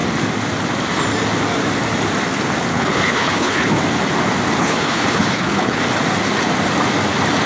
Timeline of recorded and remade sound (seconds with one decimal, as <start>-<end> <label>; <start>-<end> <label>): 0.0-2.7 recorded; 2.7-3.8 remade; 3.8-4.6 recorded; 4.6-5.8 remade; 5.8-7.5 recorded